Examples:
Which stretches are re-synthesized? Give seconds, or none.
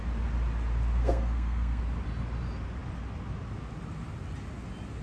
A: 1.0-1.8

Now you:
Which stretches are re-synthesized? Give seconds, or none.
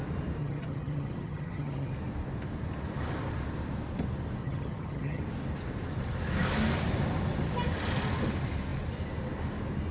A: 0.4-1.9; 4.4-5.2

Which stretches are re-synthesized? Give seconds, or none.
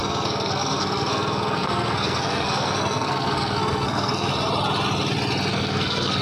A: 0.0-4.3; 5.5-6.2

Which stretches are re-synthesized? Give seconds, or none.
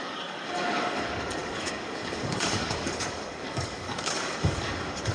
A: 0.0-5.1